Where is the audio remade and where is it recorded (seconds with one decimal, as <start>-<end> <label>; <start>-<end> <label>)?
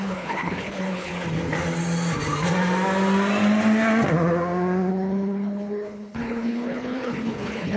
0.0-1.1 remade; 1.1-4.9 recorded; 4.9-7.8 remade